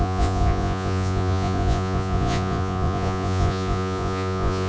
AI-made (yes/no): yes